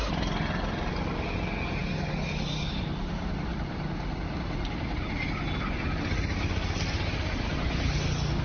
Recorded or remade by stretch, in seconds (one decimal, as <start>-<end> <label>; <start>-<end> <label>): 0.0-8.4 recorded